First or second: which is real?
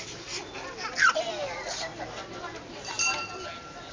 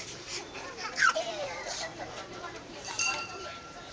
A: first